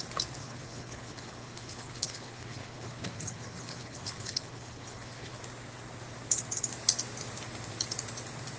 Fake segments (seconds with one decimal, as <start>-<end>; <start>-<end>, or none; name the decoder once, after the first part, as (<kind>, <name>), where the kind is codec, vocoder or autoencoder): 0.4-5.4 (codec, HILCodec)